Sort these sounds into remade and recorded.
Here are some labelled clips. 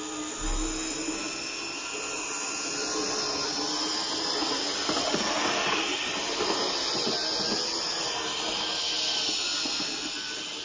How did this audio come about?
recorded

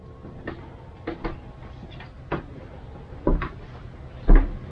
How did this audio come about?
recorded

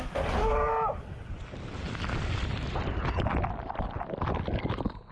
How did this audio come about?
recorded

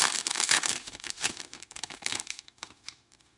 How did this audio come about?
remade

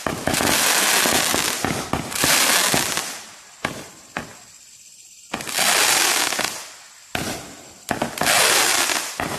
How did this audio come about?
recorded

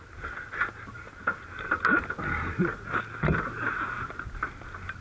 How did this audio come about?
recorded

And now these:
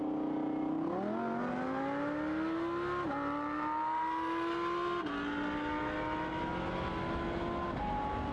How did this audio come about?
recorded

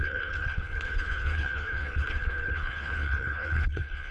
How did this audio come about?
remade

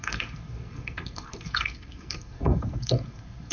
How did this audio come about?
remade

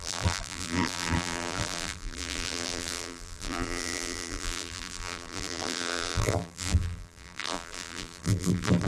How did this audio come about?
remade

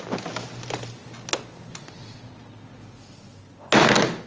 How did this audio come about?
recorded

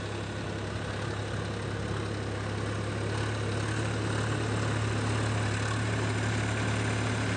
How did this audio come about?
recorded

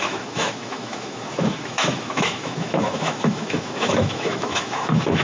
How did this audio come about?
remade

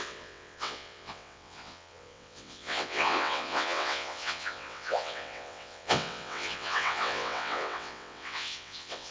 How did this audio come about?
remade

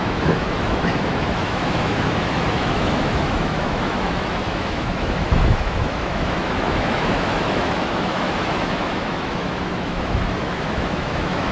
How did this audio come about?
remade